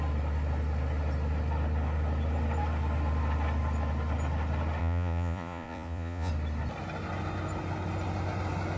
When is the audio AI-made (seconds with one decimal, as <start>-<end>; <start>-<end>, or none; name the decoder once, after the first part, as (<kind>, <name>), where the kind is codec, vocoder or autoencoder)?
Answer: 4.8-6.3 (vocoder, Vocos)